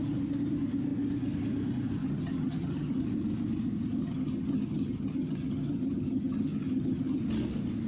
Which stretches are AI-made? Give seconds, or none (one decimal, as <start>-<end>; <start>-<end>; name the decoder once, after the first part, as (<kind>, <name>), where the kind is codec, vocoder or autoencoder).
2.0-3.0 (vocoder, HiFi-GAN); 4.0-7.2